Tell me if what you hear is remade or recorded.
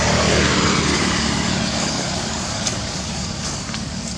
remade